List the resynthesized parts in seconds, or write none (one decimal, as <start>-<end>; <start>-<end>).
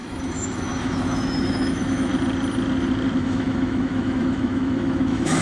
0.0-2.1; 3.2-5.4